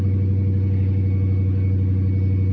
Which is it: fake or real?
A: real